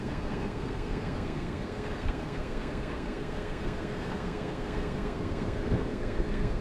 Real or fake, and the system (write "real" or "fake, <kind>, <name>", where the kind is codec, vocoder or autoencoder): fake, codec, SNAC